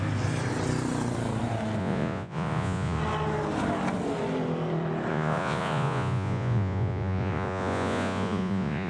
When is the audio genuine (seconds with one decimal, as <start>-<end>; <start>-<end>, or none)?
0.0-1.8; 3.0-5.1